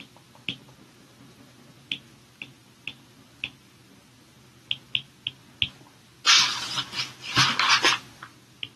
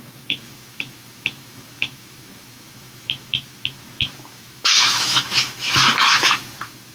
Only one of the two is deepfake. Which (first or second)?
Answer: second